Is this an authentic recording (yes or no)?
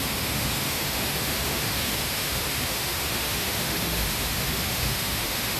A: no